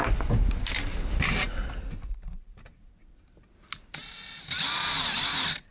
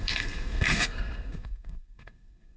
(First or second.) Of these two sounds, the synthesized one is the second